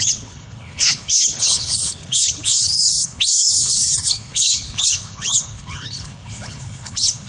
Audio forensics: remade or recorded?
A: remade